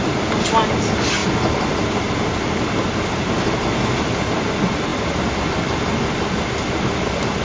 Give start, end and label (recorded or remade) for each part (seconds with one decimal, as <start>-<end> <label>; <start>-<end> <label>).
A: 0.0-7.4 recorded